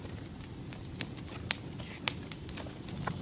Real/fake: real